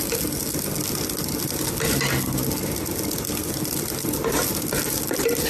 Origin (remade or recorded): recorded